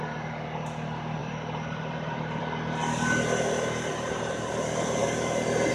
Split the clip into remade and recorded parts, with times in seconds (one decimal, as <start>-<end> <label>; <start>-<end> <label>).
0.0-1.2 recorded; 1.2-2.4 remade; 2.4-3.9 recorded; 3.9-4.5 remade; 4.5-5.7 recorded